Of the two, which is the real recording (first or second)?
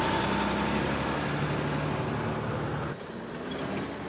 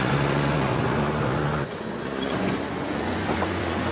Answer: first